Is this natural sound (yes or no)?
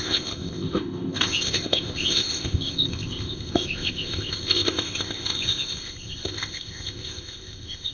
no